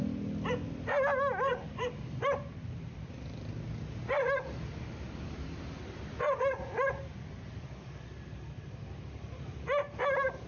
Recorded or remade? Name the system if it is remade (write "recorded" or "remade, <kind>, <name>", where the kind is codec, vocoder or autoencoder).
recorded